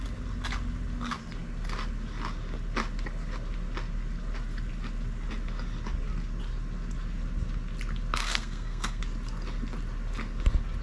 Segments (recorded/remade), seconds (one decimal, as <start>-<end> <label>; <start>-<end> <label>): 0.0-8.2 recorded; 8.2-9.0 remade; 9.0-10.8 recorded